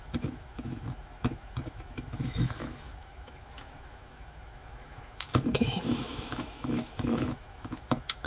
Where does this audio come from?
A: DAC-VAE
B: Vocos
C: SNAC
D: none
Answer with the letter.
A